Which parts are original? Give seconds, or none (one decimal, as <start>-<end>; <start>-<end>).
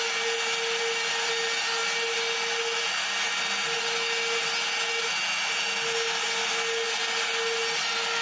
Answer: 0.0-8.2